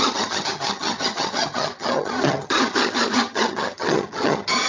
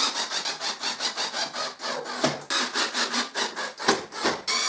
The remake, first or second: first